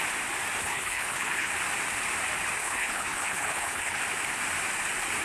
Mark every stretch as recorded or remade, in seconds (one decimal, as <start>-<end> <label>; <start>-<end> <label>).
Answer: 0.0-0.6 recorded; 0.6-1.5 remade; 1.5-2.6 recorded; 2.6-4.0 remade; 4.0-5.2 recorded